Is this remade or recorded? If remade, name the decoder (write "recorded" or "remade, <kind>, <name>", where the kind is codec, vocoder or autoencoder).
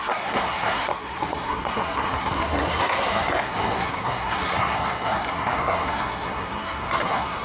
remade, codec, SNAC